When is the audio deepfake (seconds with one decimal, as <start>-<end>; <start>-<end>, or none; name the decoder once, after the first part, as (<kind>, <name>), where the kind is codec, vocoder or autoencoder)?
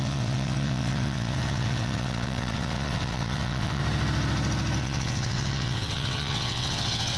0.0-3.8 (vocoder, WaveNeXt); 4.8-7.2